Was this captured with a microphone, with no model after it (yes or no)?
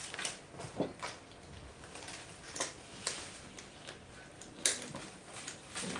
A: yes